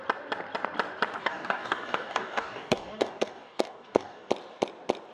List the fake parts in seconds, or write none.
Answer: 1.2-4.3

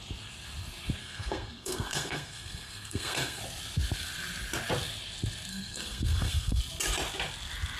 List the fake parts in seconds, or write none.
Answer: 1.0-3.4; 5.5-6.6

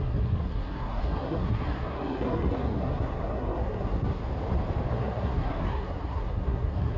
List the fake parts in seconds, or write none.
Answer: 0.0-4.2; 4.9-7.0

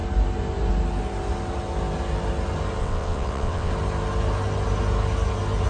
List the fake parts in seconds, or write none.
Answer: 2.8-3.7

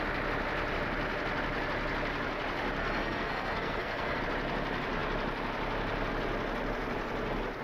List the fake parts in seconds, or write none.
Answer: 2.8-4.2